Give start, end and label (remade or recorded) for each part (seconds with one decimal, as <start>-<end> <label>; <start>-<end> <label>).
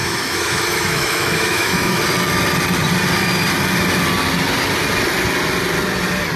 0.0-2.0 remade; 2.0-6.4 recorded